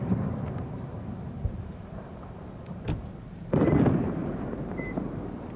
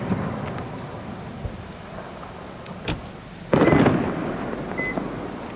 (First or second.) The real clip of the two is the second